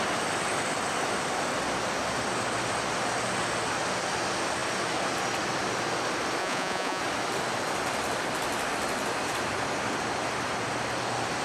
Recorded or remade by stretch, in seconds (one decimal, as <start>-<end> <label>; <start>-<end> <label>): 0.0-6.4 recorded; 6.4-7.0 remade; 7.0-11.4 recorded